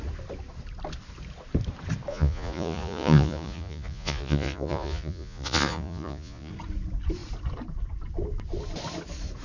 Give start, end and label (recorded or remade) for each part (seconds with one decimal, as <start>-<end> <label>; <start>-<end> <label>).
0.0-2.1 recorded; 2.1-6.5 remade; 6.5-9.4 recorded